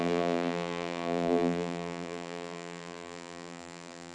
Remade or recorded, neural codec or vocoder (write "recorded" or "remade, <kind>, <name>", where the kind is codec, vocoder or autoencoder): remade, vocoder, BigVGAN v2